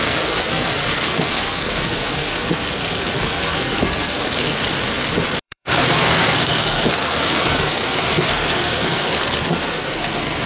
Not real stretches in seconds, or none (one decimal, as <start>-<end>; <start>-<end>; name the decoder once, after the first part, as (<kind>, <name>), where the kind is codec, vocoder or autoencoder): 0.0-4.6 (codec, SNAC); 5.4-10.5